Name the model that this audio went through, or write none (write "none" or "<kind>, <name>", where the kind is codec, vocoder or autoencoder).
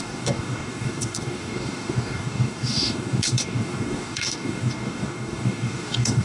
codec, DAC